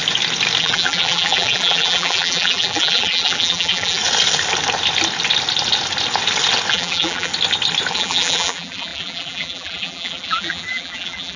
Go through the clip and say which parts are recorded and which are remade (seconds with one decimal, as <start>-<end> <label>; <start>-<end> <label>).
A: 0.0-0.6 recorded; 0.6-4.0 remade; 4.0-6.7 recorded; 6.7-7.3 remade; 7.3-7.9 recorded; 7.9-11.4 remade